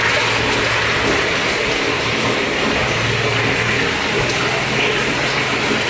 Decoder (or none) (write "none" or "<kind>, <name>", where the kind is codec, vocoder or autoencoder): none